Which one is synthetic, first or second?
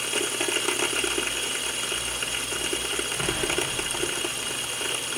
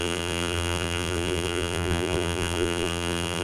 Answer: second